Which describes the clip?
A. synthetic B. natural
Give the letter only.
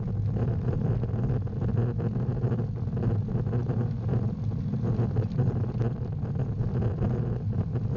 B